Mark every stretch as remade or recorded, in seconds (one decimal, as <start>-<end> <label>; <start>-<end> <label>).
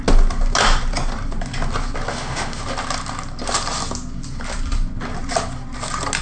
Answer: 0.0-2.1 recorded; 2.1-2.6 remade; 2.6-6.2 recorded